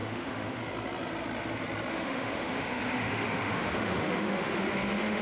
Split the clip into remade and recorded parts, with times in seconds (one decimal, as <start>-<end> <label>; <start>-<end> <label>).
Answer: 0.0-0.6 remade; 0.6-1.9 recorded; 1.9-5.2 remade